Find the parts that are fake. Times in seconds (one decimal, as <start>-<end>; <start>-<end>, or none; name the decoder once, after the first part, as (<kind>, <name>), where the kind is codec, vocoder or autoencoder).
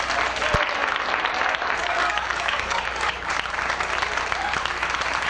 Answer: 1.8-3.3 (codec, DAC)